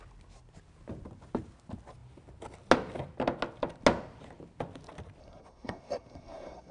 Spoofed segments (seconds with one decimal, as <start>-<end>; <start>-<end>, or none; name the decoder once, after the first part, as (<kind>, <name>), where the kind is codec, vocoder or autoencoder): 5.2-6.7 (codec, SNAC)